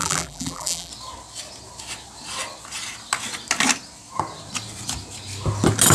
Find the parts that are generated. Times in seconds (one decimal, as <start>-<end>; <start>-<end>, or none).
0.0-0.9